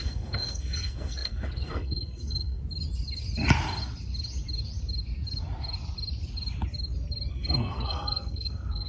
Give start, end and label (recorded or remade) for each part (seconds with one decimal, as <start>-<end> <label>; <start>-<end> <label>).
0.0-2.6 remade; 2.6-7.3 recorded; 7.3-8.9 remade